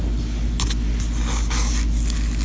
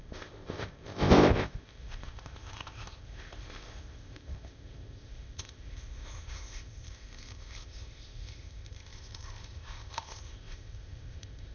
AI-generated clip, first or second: second